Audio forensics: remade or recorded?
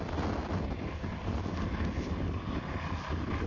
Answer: recorded